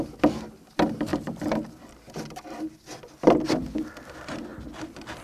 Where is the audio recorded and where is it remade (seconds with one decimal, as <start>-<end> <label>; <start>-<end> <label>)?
0.0-1.1 recorded; 1.1-1.9 remade; 1.9-4.5 recorded; 4.5-5.2 remade